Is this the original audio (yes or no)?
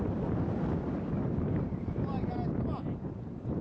yes